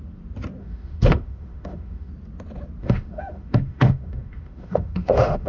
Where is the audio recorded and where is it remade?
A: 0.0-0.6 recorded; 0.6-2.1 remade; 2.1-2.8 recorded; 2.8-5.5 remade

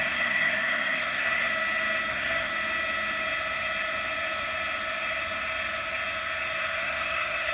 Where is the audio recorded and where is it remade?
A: 0.0-1.5 remade; 1.5-2.1 recorded; 2.1-2.5 remade; 2.5-6.8 recorded; 6.8-7.5 remade